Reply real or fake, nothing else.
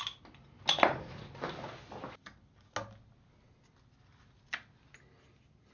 real